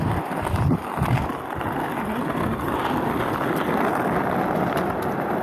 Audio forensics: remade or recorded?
remade